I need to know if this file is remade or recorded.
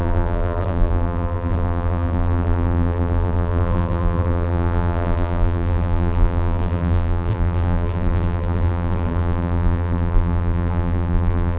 remade